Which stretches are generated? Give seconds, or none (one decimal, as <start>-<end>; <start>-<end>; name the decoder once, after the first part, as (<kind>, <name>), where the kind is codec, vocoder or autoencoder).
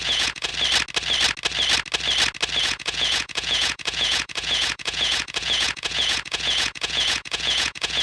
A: 0.0-0.5 (vocoder, Vocos); 2.6-8.0